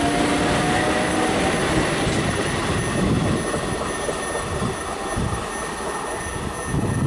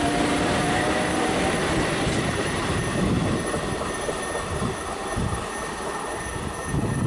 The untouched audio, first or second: first